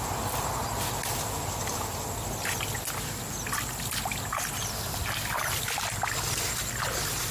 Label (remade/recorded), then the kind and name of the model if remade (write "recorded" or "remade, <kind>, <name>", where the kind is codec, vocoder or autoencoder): recorded